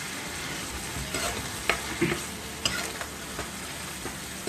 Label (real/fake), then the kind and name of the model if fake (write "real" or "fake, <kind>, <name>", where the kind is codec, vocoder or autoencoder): real